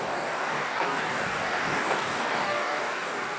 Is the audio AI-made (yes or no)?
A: yes